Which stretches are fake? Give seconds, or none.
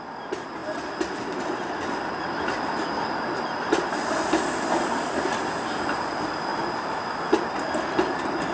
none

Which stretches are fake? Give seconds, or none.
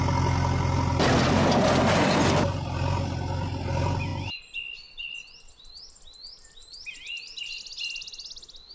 none